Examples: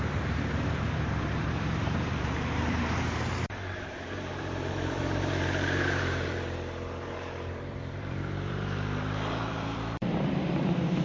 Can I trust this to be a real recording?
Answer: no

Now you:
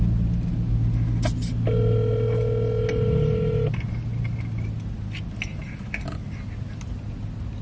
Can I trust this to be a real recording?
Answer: yes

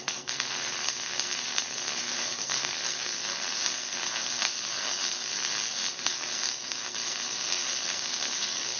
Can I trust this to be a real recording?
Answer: no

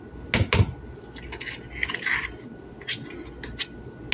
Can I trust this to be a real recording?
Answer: yes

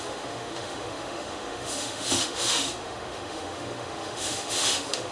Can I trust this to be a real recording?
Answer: no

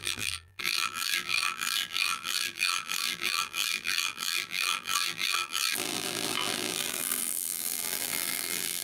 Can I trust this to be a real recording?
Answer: no